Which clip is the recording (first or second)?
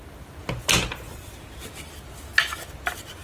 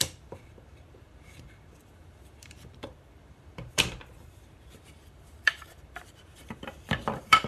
first